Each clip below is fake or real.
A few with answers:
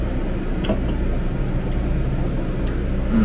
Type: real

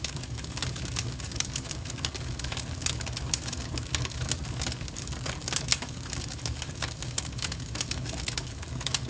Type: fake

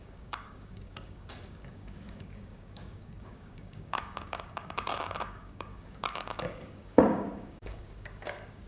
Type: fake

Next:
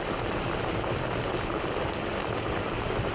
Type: real